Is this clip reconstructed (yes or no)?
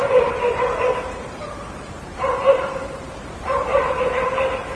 yes